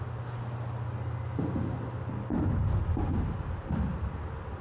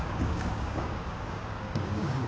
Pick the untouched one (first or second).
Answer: first